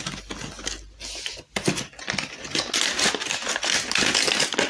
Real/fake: real